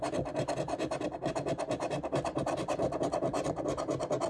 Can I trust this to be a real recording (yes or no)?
yes